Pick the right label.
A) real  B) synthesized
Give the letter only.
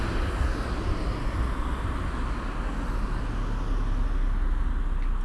A